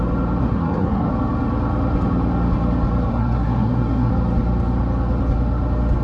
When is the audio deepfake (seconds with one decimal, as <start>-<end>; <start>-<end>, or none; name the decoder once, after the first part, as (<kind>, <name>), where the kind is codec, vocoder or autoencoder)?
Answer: 0.4-1.1 (codec, SNAC); 3.1-4.1